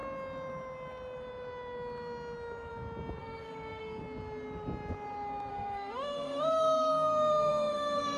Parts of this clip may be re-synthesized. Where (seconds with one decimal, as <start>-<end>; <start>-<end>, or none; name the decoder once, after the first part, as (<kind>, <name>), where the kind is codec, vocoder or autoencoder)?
3.2-4.0 (codec, SNAC); 5.5-8.2